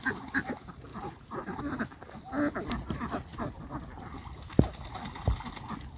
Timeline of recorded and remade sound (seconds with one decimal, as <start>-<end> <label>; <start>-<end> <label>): 0.0-0.9 recorded; 0.9-1.6 remade; 1.6-6.0 recorded